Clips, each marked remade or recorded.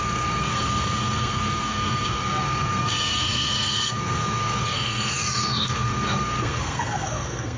remade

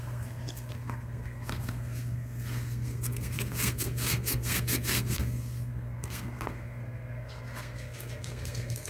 remade